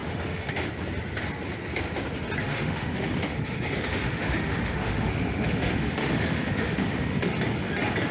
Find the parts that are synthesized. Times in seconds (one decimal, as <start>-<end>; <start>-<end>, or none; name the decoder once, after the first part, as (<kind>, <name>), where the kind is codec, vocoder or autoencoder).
0.0-0.7 (autoencoder, DAC-VAE); 2.4-7.3